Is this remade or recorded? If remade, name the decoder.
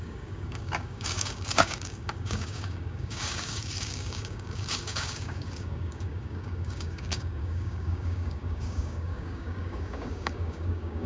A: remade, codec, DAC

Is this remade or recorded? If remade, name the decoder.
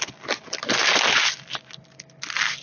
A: recorded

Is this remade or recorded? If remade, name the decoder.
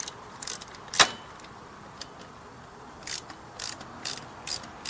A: remade, vocoder, BigVGAN v2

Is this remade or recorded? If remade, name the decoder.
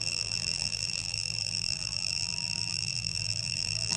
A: remade, vocoder, BigVGAN v2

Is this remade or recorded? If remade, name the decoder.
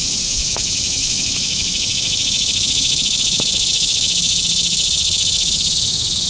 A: remade, autoencoder, DAC-VAE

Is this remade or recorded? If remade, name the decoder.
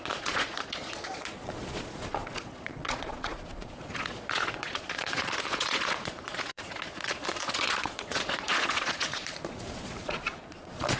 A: remade, vocoder, Vocos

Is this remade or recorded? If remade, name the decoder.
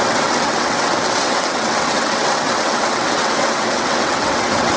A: remade, vocoder, WaveNeXt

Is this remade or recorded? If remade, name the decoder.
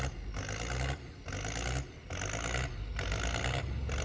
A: recorded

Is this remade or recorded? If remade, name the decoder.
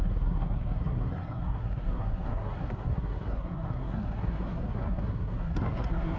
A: remade, codec, SNAC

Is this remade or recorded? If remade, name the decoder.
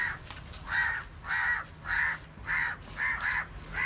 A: recorded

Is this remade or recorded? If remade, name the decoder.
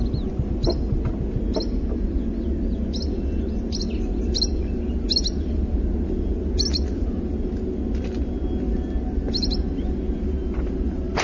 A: recorded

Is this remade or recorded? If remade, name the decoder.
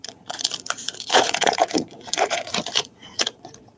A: remade, vocoder, Vocos